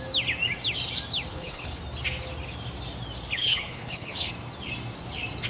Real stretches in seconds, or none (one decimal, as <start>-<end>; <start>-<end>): 0.0-1.3; 1.8-3.4; 4.3-5.5